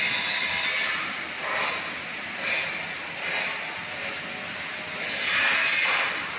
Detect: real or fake real